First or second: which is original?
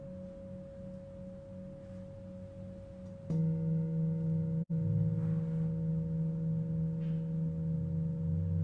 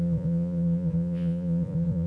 first